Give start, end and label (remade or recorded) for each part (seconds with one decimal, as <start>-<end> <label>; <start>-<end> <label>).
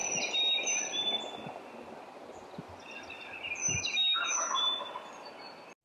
0.0-3.6 recorded; 3.6-4.6 remade; 4.6-5.8 recorded